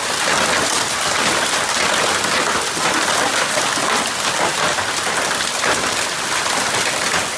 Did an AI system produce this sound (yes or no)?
no